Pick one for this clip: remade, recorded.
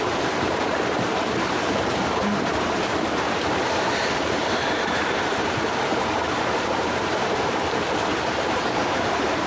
remade